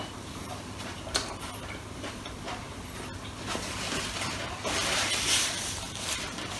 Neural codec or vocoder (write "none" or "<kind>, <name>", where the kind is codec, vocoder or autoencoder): vocoder, BigVGAN v2